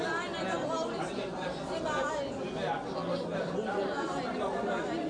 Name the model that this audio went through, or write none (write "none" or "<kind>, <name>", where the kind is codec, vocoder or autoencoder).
none